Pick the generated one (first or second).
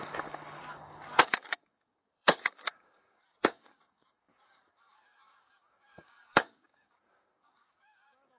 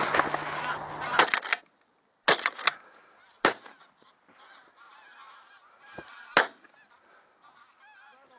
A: first